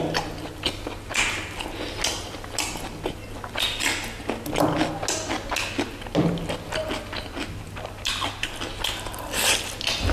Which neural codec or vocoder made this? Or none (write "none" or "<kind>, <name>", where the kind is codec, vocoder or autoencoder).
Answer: none